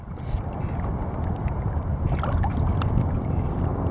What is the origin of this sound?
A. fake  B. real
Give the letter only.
B